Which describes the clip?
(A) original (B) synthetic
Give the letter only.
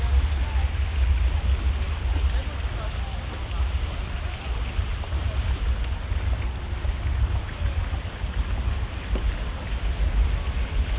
A